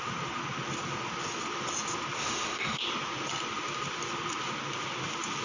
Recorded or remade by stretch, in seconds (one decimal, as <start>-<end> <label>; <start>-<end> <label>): 0.0-2.2 recorded; 2.2-2.8 remade; 2.8-5.4 recorded